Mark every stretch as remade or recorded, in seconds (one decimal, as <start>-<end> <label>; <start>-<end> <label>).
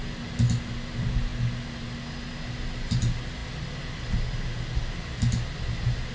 0.0-6.1 recorded